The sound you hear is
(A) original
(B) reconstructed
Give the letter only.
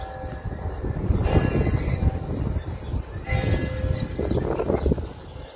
A